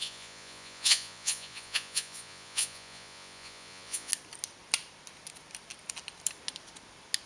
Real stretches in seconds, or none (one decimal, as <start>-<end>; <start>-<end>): 4.1-7.3